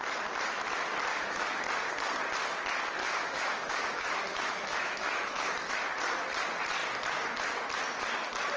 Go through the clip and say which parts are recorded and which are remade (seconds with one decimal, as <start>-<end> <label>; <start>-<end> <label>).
0.0-1.1 recorded; 1.1-1.6 remade; 1.6-3.0 recorded; 3.0-5.8 remade; 5.8-8.6 recorded